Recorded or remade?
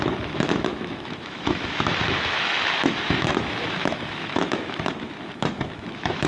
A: remade